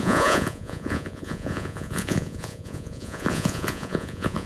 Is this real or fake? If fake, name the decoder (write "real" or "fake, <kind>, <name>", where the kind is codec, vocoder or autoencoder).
fake, vocoder, Vocos